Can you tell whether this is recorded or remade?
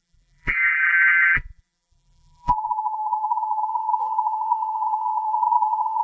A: remade